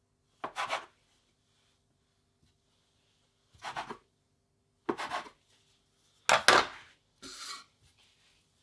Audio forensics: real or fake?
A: real